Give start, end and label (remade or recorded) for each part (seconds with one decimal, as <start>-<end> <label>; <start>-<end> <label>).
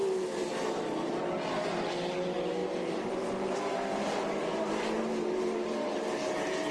0.0-1.2 remade; 1.2-2.6 recorded; 2.6-5.9 remade; 5.9-6.7 recorded